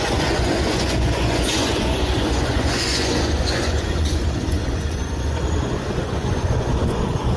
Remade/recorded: remade